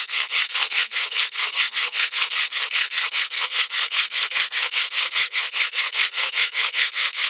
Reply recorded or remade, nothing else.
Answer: remade